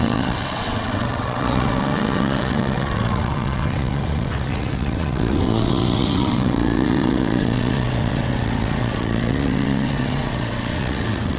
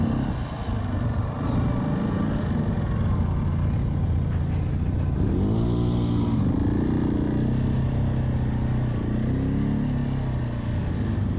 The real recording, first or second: second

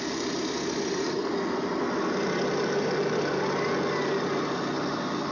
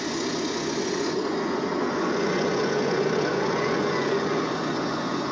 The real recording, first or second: first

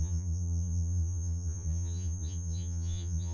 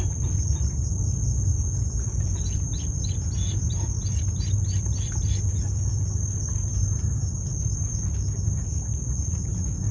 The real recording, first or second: second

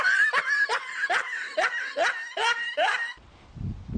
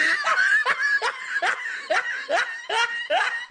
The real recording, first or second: second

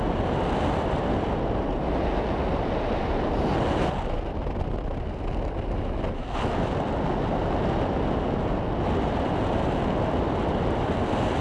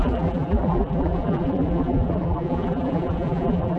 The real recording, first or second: first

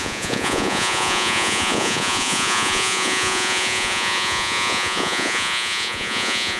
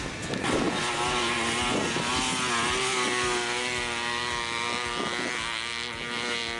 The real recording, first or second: second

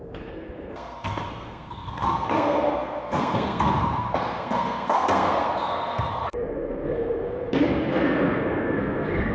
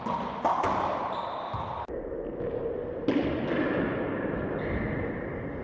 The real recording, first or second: second